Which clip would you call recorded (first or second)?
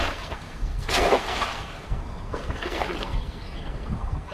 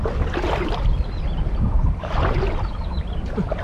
second